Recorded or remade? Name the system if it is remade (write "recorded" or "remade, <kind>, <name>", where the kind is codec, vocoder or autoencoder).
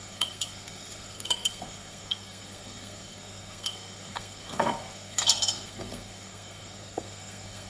remade, codec, SNAC